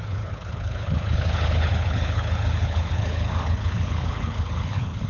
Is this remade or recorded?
remade